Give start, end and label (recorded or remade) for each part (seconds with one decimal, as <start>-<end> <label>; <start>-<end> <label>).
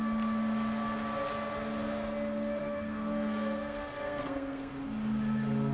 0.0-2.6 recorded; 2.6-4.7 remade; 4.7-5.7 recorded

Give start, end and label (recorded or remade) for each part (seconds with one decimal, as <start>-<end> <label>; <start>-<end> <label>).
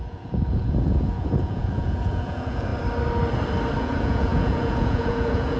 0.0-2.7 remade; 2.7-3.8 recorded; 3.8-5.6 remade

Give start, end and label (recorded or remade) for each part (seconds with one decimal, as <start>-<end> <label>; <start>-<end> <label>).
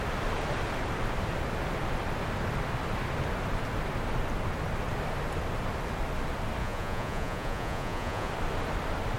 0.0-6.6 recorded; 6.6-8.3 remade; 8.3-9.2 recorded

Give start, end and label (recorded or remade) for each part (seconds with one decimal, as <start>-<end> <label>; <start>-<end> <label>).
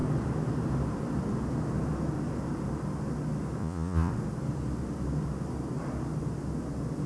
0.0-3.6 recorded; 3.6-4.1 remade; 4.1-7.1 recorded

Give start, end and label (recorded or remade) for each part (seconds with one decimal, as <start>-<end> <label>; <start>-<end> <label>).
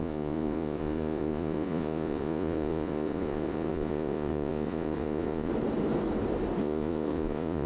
0.0-5.5 remade; 5.5-6.6 recorded; 6.6-7.7 remade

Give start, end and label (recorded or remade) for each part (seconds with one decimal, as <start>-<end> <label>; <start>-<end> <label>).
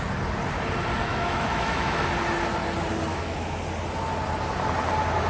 0.0-1.1 recorded; 1.1-2.1 remade; 2.1-3.1 recorded; 3.1-3.6 remade; 3.6-5.3 recorded